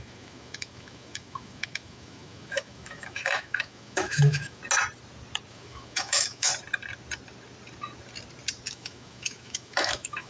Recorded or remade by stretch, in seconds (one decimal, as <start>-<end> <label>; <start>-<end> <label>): 0.0-4.6 remade; 4.6-5.5 recorded; 5.5-6.5 remade; 6.5-8.7 recorded; 8.7-10.3 remade